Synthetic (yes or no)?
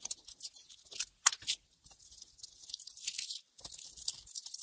no